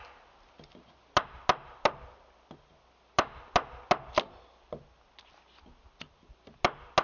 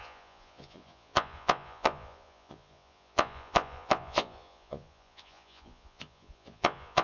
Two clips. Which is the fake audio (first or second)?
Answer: second